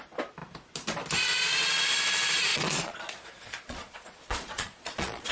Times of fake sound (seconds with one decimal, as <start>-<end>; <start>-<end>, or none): 2.5-5.3